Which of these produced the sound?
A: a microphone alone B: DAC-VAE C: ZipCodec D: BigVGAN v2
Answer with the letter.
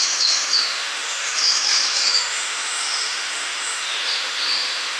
B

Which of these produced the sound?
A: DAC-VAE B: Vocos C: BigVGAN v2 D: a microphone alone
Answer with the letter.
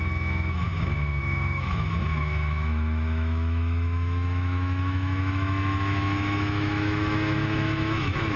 A